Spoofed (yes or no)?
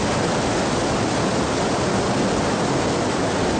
no